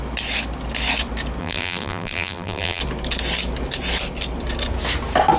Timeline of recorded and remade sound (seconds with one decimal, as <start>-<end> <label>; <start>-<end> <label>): 0.0-1.4 recorded; 1.4-2.8 remade; 2.8-5.4 recorded